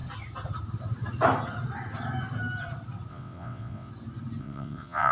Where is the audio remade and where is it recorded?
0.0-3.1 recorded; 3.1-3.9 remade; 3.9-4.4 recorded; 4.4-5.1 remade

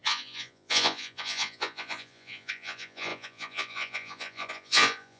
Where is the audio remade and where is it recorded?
0.0-5.2 remade

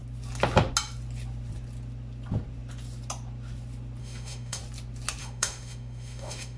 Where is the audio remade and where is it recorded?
0.0-4.0 recorded; 4.0-4.6 remade; 4.6-5.2 recorded; 5.2-6.6 remade

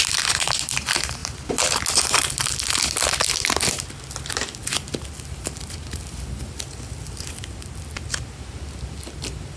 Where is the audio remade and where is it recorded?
0.0-9.6 recorded

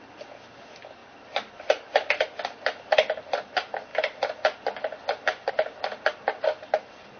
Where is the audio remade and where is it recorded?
0.0-7.2 recorded

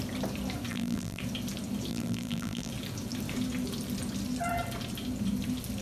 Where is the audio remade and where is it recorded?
0.0-0.7 recorded; 0.7-1.2 remade; 1.2-1.9 recorded; 1.9-2.7 remade; 2.7-5.8 recorded